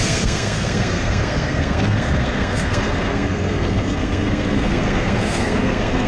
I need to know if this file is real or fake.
fake